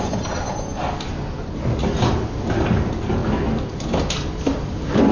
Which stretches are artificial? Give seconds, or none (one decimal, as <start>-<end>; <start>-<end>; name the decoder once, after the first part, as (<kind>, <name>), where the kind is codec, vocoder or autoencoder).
none

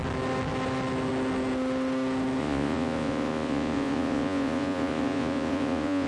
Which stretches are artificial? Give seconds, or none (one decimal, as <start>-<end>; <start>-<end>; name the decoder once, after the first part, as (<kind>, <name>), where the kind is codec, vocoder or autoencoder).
2.4-6.1 (vocoder, Vocos)

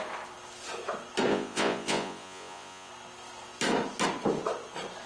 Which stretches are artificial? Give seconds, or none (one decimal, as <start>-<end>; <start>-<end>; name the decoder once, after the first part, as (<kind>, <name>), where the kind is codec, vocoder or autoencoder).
1.3-2.9 (vocoder, Vocos)